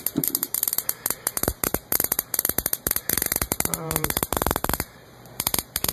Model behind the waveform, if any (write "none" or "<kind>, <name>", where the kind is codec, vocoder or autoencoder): vocoder, BigVGAN v2